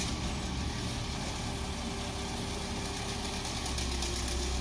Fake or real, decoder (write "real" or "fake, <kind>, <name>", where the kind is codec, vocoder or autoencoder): real